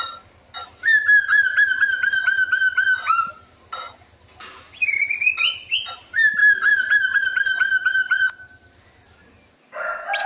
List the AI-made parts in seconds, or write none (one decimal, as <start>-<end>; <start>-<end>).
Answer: 6.4-8.8